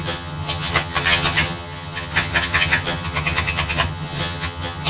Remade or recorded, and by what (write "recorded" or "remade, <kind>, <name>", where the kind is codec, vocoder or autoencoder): remade, vocoder, HiFi-GAN